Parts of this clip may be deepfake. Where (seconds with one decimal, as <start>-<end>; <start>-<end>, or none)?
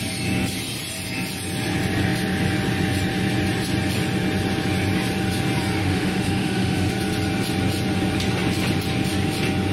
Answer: 5.8-6.9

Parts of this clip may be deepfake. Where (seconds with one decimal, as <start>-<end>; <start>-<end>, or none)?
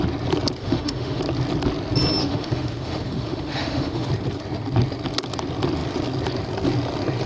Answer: 0.6-1.2; 2.2-4.1